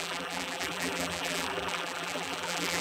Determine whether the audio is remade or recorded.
remade